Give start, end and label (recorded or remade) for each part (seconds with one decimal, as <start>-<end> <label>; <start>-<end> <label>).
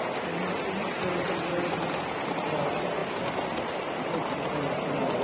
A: 0.0-5.2 recorded